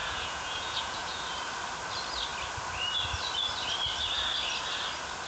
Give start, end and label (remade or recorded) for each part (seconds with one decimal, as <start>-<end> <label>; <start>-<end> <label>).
0.0-1.2 remade; 1.2-5.3 recorded